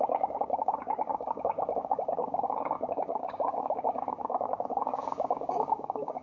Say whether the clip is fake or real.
fake